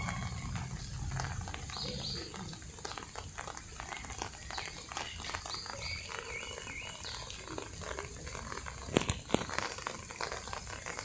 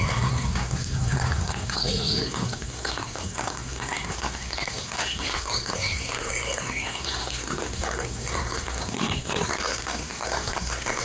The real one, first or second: first